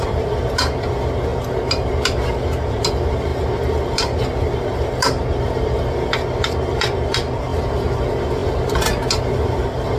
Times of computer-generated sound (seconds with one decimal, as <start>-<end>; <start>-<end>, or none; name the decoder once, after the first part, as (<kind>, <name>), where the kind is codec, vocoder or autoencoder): 7.5-8.0 (vocoder, BigVGAN v2)

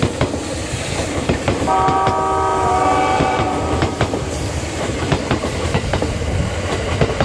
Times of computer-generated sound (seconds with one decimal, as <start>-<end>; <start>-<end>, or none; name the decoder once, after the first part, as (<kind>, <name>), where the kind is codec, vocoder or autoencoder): 0.6-2.1 (vocoder, BigVGAN v2); 2.5-6.0

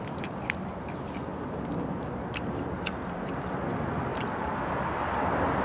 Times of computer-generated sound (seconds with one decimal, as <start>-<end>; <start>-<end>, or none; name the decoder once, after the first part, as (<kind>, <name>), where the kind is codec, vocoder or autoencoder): 4.1-4.6 (vocoder, BigVGAN v2)

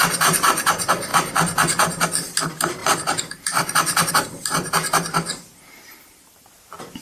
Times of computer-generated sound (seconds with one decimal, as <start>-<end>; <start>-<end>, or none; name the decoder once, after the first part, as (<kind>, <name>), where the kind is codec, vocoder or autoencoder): 2.8-4.1 (vocoder, BigVGAN v2)

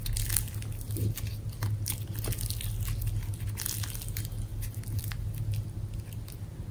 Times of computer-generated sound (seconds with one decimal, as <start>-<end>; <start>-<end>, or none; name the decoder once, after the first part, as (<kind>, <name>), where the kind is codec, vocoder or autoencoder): none

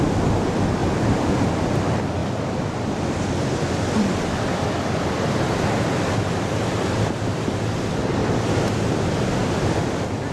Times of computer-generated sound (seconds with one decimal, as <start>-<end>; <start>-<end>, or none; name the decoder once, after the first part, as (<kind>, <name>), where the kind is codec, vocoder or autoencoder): 0.8-1.3 (vocoder, BigVGAN v2); 2.2-6.1; 8.2-10.3

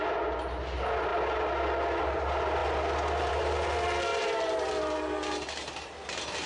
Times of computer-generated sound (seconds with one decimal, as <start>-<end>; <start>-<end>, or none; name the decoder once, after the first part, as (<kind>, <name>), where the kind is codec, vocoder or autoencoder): 4.1-4.7 (vocoder, BigVGAN v2)

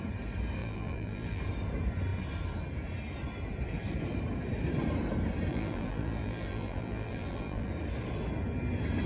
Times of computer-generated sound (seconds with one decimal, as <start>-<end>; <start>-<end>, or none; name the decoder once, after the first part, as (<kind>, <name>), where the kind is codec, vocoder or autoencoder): 0.6-1.4 (vocoder, BigVGAN v2); 5.5-7.7